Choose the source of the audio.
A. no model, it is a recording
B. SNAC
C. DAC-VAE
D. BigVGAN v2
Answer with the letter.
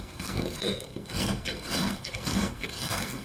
B